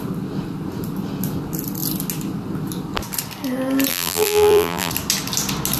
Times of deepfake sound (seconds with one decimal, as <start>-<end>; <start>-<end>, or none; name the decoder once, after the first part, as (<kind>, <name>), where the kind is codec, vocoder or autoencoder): 3.9-4.9 (vocoder, BigVGAN v2)

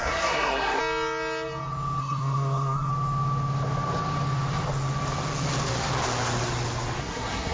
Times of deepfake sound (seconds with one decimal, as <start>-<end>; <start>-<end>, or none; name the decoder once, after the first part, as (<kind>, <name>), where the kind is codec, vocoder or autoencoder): 0.0-0.8 (codec, SNAC); 2.0-2.9; 7.0-7.5

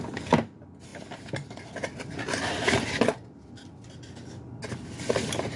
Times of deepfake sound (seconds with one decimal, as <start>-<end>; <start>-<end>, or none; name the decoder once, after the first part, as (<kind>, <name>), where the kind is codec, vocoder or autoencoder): none

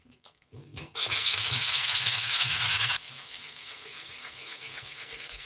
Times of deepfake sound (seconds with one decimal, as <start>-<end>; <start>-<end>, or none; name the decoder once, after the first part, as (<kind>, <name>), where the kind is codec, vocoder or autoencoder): 0.0-5.5 (codec, SNAC)